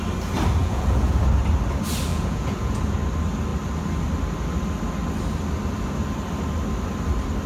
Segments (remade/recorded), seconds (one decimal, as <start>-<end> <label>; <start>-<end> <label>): 0.0-0.6 recorded; 0.6-1.2 remade; 1.2-2.1 recorded; 2.1-2.8 remade; 2.8-7.5 recorded